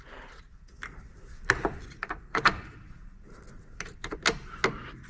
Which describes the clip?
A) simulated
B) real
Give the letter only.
B